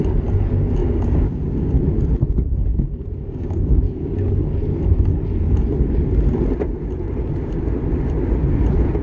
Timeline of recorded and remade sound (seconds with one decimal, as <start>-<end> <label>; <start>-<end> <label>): 0.0-0.8 recorded; 0.8-1.8 remade; 1.8-2.7 recorded; 2.7-4.5 remade; 4.5-9.0 recorded